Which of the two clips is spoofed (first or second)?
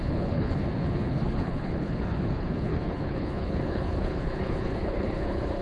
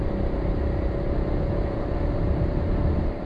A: first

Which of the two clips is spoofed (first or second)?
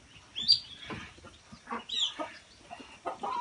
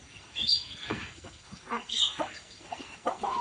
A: second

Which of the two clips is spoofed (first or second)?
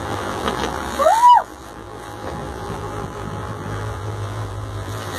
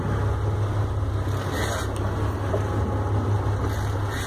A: first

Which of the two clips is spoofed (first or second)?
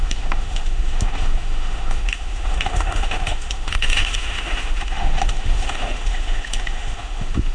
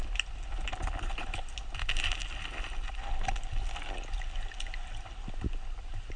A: first